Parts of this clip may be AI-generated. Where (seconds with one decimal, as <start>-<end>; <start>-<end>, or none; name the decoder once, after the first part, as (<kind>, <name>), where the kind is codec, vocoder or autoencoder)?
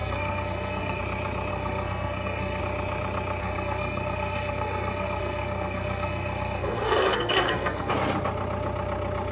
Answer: 0.0-1.0 (codec, SNAC); 1.5-2.6; 3.4-7.9